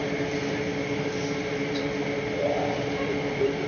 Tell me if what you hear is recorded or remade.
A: recorded